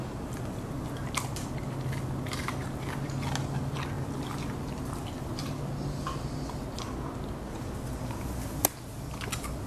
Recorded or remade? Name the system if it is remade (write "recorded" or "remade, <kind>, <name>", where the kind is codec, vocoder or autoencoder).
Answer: recorded